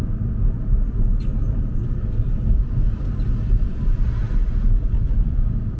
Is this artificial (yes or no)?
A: no